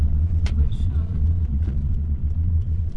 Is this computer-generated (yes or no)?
yes